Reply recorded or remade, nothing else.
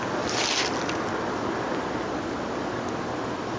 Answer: recorded